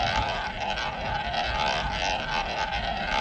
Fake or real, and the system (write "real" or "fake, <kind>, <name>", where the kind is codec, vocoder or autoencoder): real